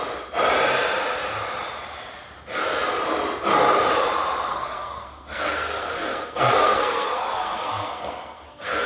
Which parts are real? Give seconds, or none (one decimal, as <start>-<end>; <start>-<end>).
0.0-4.5